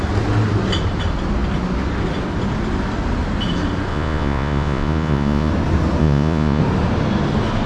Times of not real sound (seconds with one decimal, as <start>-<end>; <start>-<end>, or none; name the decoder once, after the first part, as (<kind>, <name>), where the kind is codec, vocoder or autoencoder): 3.9-5.5 (vocoder, Vocos); 6.0-6.6